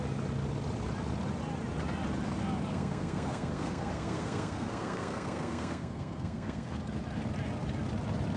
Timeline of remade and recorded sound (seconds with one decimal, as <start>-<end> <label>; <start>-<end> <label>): 0.0-2.7 recorded; 2.7-6.8 remade; 6.8-8.4 recorded

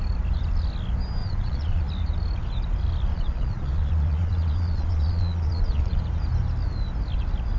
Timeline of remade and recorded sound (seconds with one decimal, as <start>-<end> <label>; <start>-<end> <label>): 0.0-1.2 recorded; 1.2-1.9 remade; 1.9-3.1 recorded; 3.1-6.0 remade; 6.0-7.6 recorded